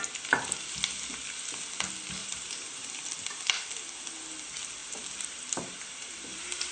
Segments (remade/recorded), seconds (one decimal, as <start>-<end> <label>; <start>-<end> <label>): 0.0-2.2 recorded; 2.2-3.1 remade; 3.1-4.8 recorded; 4.8-6.7 remade